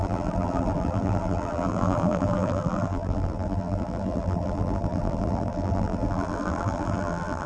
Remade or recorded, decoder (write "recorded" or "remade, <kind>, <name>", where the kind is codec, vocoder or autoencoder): remade, vocoder, BigVGAN v2